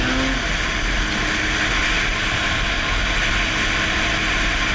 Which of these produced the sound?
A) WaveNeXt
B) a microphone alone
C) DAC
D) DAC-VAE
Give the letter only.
B